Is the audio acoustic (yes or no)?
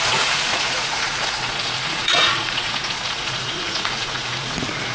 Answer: no